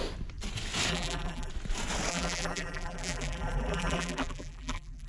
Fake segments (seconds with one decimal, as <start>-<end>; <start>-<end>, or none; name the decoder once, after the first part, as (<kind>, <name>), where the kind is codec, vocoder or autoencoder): 0.9-1.5 (vocoder, BigVGAN v2); 2.1-5.1